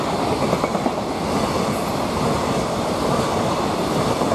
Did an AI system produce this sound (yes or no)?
no